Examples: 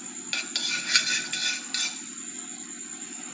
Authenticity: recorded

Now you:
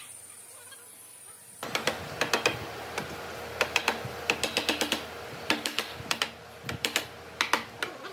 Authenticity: recorded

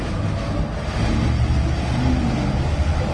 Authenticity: recorded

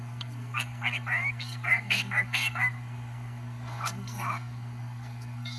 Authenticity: remade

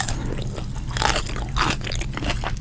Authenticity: recorded